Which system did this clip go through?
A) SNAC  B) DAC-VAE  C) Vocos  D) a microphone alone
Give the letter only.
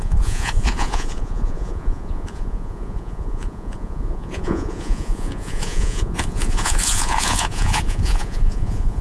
C